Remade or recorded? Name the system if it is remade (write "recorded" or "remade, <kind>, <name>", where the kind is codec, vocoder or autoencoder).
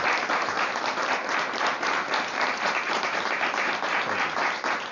remade, vocoder, BigVGAN v2